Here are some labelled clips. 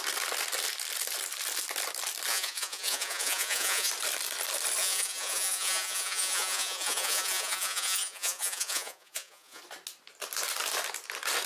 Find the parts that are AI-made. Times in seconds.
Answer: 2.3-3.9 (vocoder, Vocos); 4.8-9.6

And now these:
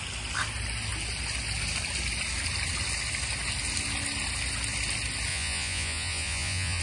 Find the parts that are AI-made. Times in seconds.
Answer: 5.3-6.8 (vocoder, Vocos)

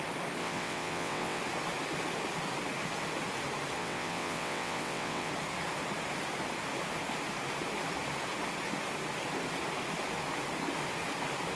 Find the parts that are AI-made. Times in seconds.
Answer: 0.4-1.4 (vocoder, WaveNeXt); 3.8-5.3